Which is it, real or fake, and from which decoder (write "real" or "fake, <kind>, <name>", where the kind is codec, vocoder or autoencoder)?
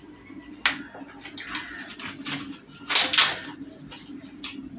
real